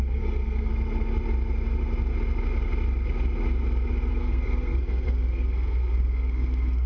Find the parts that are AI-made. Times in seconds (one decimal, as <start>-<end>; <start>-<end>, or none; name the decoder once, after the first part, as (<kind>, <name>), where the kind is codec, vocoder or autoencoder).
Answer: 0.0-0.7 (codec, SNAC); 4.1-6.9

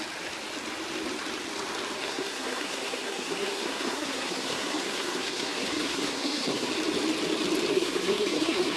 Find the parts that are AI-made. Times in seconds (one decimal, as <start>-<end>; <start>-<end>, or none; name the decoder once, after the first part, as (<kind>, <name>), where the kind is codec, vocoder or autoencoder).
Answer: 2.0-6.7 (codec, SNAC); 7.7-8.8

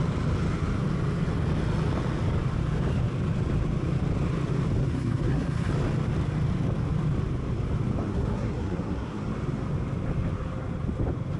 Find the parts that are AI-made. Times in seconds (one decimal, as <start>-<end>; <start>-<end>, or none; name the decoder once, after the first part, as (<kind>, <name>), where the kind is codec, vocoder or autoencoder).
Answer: 4.8-5.7 (codec, SNAC); 8.1-9.2